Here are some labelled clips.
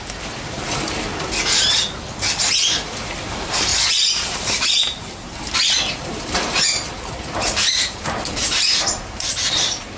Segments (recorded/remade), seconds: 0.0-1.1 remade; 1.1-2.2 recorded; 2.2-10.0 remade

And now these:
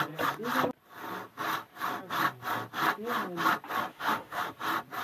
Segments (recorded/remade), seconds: 0.0-3.9 recorded; 3.9-4.5 remade; 4.5-5.0 recorded

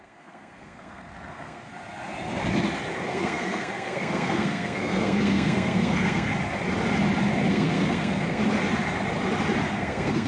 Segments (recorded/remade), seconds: 0.0-1.7 remade; 1.7-3.1 recorded; 3.1-6.3 remade; 6.3-7.5 recorded; 7.5-8.4 remade; 8.4-9.7 recorded; 9.7-10.3 remade

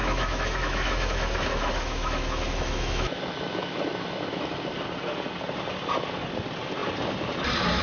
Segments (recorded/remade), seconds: 0.0-4.7 remade; 4.7-7.8 recorded

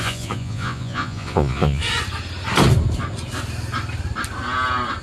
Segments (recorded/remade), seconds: 0.0-1.8 remade; 1.8-5.0 recorded